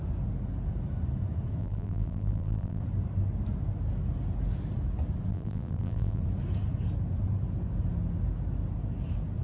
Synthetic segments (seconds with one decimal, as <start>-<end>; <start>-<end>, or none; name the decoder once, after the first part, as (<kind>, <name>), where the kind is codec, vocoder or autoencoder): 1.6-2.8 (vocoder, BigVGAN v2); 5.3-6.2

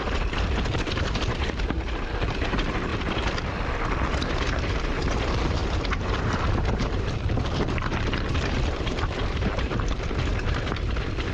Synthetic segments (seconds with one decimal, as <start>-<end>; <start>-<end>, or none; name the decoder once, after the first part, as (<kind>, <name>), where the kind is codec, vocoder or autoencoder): 0.0-2.9 (vocoder, BigVGAN v2); 4.7-11.3

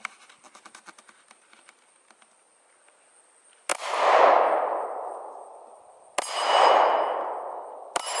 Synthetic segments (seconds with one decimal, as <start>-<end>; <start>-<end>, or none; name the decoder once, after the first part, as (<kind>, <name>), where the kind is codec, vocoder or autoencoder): none